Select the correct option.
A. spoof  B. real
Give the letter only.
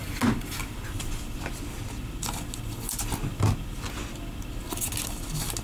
B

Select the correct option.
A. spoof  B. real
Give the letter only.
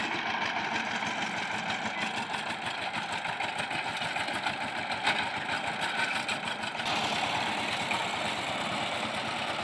B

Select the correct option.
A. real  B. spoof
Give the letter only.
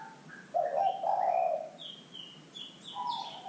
A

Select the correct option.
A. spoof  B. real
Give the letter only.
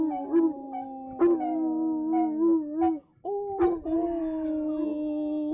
B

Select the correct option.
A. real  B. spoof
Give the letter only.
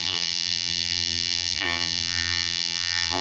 B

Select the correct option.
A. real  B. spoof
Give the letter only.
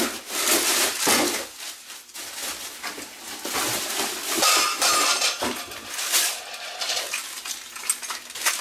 A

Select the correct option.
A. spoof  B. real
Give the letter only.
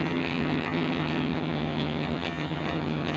A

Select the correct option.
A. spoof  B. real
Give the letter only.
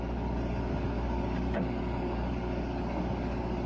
A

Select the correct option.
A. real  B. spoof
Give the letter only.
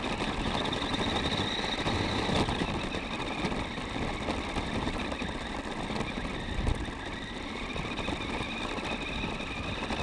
A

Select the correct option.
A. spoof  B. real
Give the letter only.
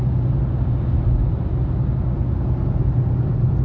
B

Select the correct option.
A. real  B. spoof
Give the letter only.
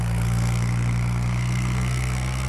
B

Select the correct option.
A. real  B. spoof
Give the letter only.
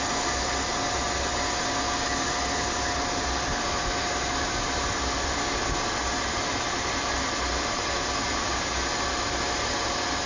A